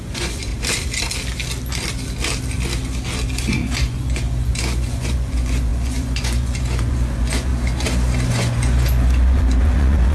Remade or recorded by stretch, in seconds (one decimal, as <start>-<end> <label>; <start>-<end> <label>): 0.0-0.5 remade; 0.5-3.5 recorded; 3.5-7.5 remade; 7.5-8.3 recorded; 8.3-10.1 remade